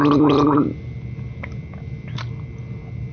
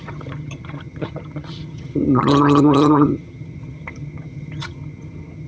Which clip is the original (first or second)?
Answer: first